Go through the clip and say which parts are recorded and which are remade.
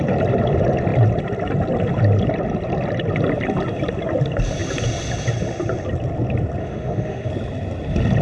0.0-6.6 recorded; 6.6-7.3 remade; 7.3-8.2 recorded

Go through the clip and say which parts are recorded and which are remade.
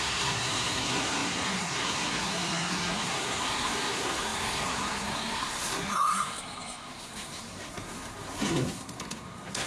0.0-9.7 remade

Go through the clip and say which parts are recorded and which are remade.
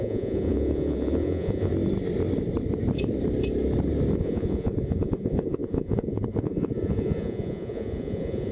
0.0-1.7 remade; 1.7-4.2 recorded; 4.2-8.5 remade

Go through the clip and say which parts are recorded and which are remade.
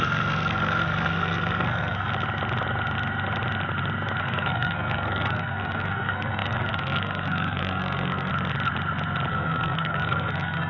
0.0-2.1 remade; 2.1-4.2 recorded; 4.2-8.3 remade; 8.3-9.3 recorded; 9.3-10.7 remade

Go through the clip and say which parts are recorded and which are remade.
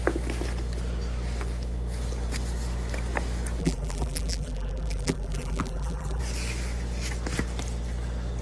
0.0-3.6 recorded; 3.6-6.2 remade; 6.2-8.4 recorded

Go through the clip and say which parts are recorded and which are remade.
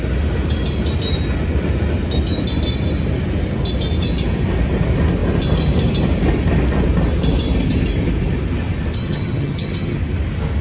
0.0-9.0 recorded; 9.0-10.0 remade; 10.0-10.6 recorded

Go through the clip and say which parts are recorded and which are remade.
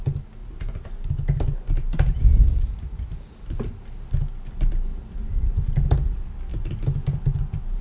0.0-4.7 recorded; 4.7-7.8 remade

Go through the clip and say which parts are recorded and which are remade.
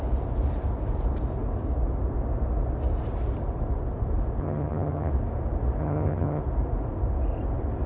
0.0-4.4 recorded; 4.4-5.1 remade; 5.1-5.8 recorded; 5.8-6.4 remade; 6.4-7.9 recorded